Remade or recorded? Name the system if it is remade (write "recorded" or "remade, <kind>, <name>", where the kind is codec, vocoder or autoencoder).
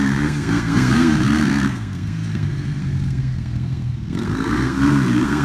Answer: remade, codec, SNAC